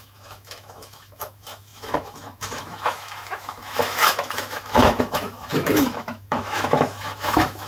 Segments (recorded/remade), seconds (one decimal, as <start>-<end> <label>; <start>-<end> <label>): 0.0-7.7 remade